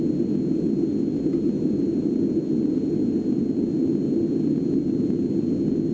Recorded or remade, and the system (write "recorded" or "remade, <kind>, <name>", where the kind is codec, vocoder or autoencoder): recorded